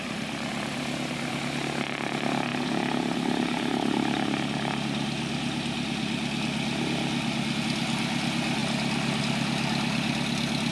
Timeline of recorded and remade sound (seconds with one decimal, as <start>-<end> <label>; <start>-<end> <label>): 0.0-10.7 recorded